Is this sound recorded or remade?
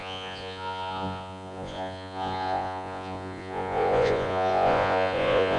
remade